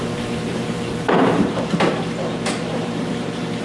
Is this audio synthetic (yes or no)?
yes